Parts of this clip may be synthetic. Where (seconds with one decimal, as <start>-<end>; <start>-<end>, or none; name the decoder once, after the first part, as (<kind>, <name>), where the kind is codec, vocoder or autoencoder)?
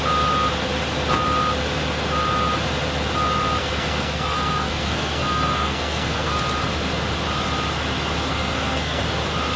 3.6-6.4 (codec, SNAC); 8.3-9.0